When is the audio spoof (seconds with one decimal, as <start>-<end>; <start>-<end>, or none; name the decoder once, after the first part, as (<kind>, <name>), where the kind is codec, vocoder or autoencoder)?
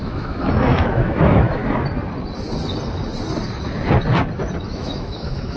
0.0-1.6 (autoencoder, DAC-VAE); 4.6-5.6